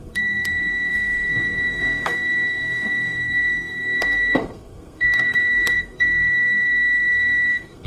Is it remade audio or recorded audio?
remade